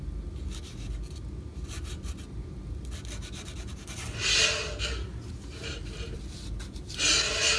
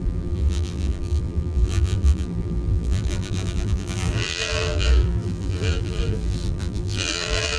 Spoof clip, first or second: second